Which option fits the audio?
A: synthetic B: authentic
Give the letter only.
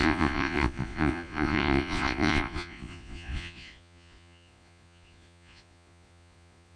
A